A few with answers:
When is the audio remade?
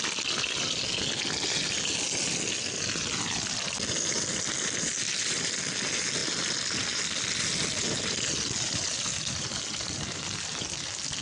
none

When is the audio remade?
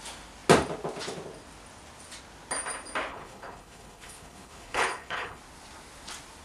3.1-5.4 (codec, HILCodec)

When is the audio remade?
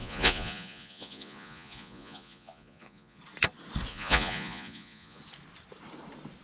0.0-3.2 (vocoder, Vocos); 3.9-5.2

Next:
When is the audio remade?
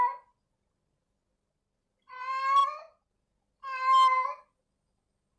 none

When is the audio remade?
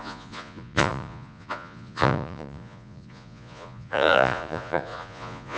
0.0-5.6 (vocoder, Vocos)